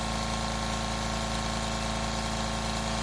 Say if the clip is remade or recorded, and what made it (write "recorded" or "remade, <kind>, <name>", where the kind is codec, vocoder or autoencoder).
recorded